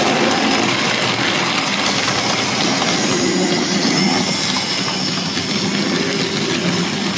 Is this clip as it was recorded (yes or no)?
yes